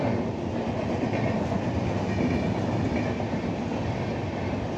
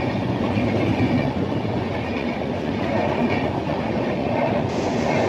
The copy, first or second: second